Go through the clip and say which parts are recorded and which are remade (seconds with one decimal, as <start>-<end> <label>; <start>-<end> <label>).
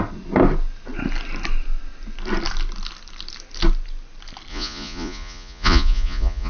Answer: 0.0-4.5 recorded; 4.5-6.5 remade